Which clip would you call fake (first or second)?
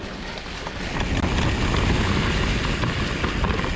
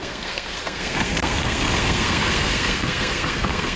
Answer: second